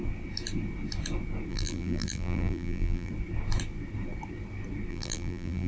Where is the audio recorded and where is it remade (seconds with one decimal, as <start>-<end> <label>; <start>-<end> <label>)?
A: 0.0-1.5 recorded; 1.5-3.1 remade; 3.1-4.9 recorded; 4.9-5.7 remade